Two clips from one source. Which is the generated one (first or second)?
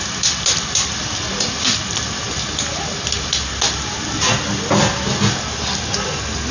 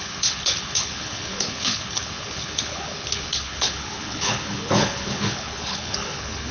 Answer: second